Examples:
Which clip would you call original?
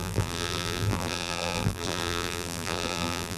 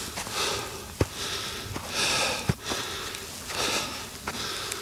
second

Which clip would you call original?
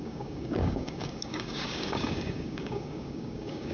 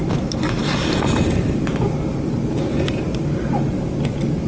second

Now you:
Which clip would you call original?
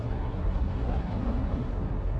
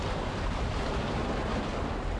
second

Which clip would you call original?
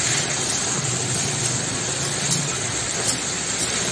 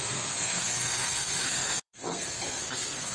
first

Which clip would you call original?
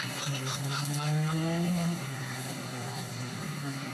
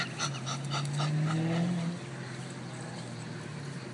second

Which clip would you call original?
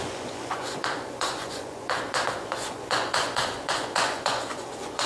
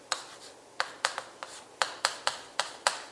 second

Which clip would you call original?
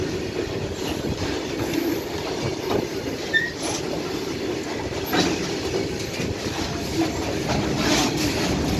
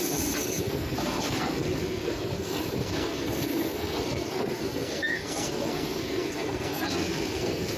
first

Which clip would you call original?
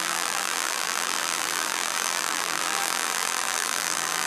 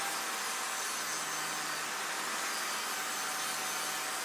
second